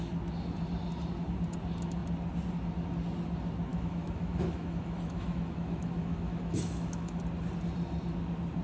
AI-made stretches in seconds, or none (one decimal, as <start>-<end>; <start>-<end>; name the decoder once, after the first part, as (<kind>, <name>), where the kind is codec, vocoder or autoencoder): 3.7-7.2 (autoencoder, DAC-VAE)